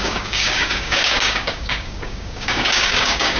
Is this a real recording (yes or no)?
no